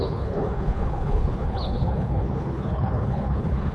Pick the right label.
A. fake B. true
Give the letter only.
A